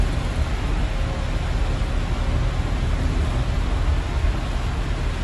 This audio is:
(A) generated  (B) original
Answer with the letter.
B